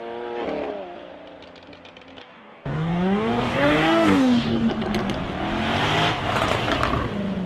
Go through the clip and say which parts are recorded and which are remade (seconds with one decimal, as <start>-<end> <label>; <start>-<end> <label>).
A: 0.0-2.2 recorded; 2.2-4.7 remade; 4.7-7.5 recorded